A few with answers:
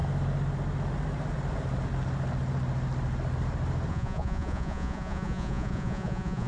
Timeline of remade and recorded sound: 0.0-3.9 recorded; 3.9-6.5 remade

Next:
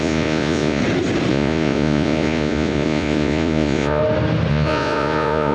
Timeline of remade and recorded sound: 0.0-0.8 remade; 0.8-1.3 recorded; 1.3-4.0 remade; 4.0-4.5 recorded; 4.5-5.5 remade

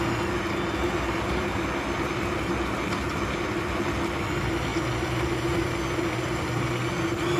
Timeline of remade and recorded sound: 0.0-7.4 recorded

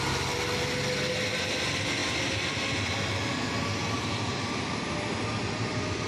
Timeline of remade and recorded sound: 0.0-6.1 recorded

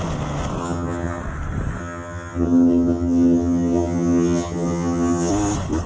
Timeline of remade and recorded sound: 0.0-0.6 recorded; 0.6-1.2 remade; 1.2-1.8 recorded; 1.8-5.3 remade; 5.3-5.9 recorded